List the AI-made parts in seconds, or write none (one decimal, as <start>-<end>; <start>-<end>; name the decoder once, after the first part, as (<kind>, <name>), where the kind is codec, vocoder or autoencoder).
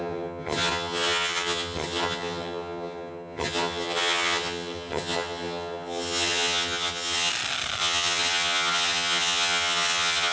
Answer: 0.0-7.3 (vocoder, HiFi-GAN); 7.8-10.3